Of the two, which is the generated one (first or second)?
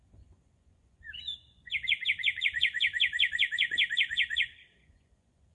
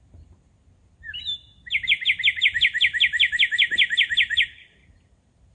first